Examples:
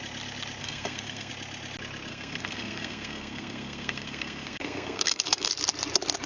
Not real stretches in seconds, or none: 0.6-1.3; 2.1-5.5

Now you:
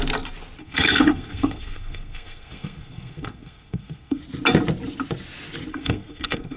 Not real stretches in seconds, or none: 0.6-4.2; 5.7-6.6

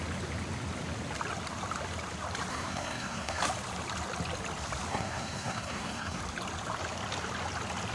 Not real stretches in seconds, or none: 2.5-3.4; 4.9-6.2

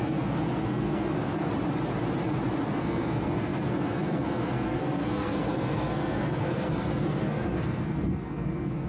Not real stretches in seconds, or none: 0.0-1.5; 2.7-8.9

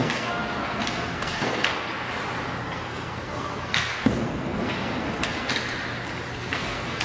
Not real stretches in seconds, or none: 0.0-1.9; 2.6-5.5; 6.4-7.0

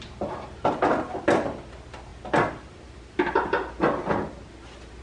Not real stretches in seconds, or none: none